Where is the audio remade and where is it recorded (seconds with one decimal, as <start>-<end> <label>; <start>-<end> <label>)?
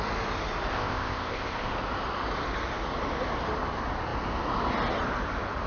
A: 0.0-0.7 recorded; 0.7-1.7 remade; 1.7-5.7 recorded